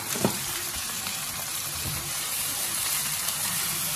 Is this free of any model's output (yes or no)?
no